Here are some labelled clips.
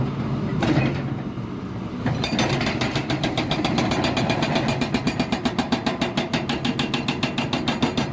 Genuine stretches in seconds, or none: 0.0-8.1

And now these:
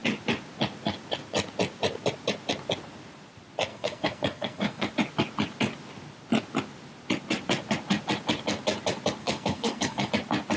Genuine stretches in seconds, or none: 0.0-3.7; 4.9-9.2; 10.1-10.6

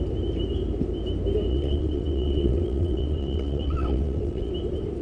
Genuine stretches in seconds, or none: 0.0-1.5; 4.5-5.0

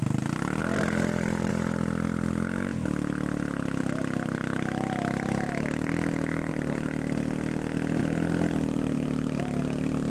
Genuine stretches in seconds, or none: 0.0-0.6; 1.5-3.8; 6.5-10.1

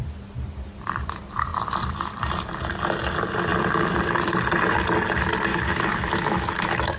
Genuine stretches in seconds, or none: 0.0-5.5

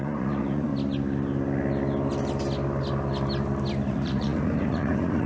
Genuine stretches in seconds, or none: 0.7-3.9